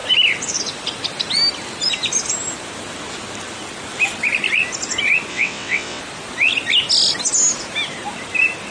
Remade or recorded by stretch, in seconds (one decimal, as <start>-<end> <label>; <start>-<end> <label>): 0.0-5.3 recorded; 5.3-6.0 remade; 6.0-8.7 recorded